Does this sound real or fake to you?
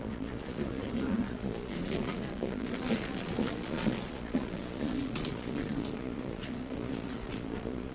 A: fake